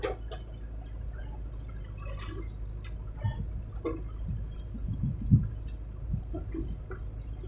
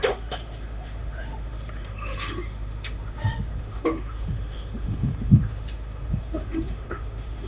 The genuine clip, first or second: first